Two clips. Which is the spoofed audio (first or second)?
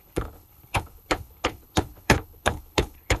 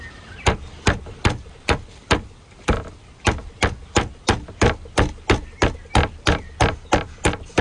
first